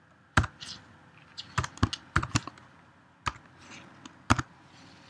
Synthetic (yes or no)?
no